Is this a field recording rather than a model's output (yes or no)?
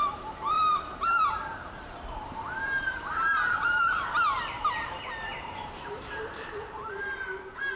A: no